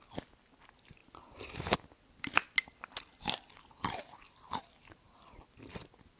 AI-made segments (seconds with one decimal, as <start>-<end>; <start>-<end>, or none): none